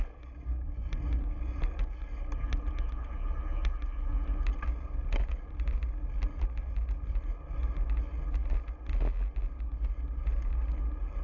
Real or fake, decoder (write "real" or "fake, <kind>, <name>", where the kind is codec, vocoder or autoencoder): real